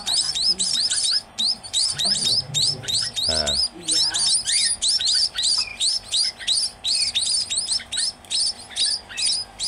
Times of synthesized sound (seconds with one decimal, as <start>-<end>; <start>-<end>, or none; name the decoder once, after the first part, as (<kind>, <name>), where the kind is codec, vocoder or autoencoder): 0.0-3.6 (vocoder, BigVGAN v2); 5.0-5.7